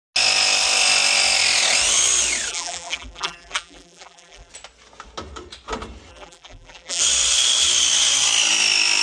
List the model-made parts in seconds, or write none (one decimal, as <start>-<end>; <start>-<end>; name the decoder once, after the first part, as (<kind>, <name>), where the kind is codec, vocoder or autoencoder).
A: 2.5-4.5 (vocoder, BigVGAN v2); 6.1-7.0